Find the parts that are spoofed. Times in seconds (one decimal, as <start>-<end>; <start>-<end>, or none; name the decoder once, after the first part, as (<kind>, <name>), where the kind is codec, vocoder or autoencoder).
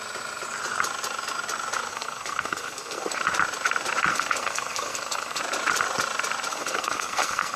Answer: 1.9-3.2 (codec, SNAC); 4.1-5.4; 6.5-7.6